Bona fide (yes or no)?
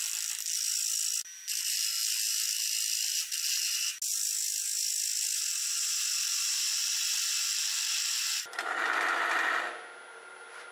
yes